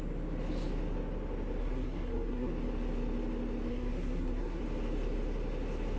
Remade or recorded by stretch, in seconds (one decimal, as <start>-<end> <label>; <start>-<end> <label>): 0.0-1.6 recorded; 1.6-2.5 remade; 2.5-3.7 recorded; 3.7-4.6 remade; 4.6-6.0 recorded